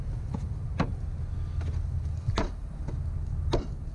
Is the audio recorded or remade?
recorded